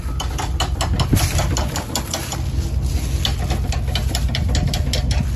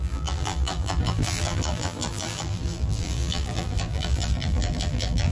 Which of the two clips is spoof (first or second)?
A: second